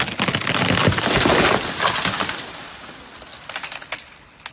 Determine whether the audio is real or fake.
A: real